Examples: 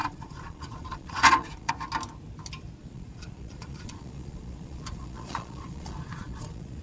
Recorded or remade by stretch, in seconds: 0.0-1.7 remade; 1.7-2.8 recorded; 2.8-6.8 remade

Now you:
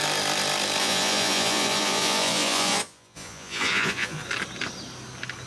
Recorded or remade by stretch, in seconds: 0.0-0.8 recorded; 0.8-4.2 remade; 4.2-5.5 recorded

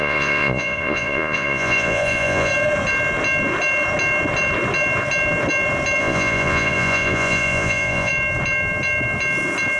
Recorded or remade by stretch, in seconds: 0.0-2.5 remade; 2.5-6.0 recorded; 6.0-8.1 remade; 8.1-9.8 recorded

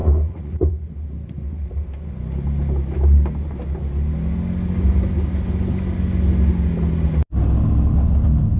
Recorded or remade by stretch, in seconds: 0.0-0.7 remade; 0.7-8.6 recorded

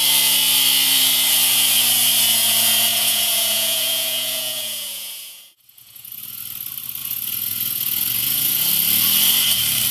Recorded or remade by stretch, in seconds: 0.0-2.9 recorded; 2.9-6.4 remade; 6.4-7.0 recorded; 7.0-8.7 remade; 8.7-9.9 recorded